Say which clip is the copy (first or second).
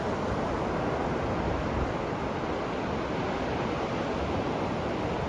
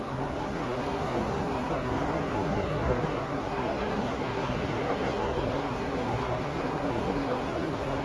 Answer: second